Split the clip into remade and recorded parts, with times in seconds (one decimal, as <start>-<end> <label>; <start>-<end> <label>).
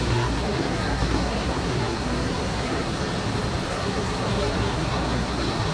0.0-3.0 remade; 3.0-3.7 recorded; 3.7-5.7 remade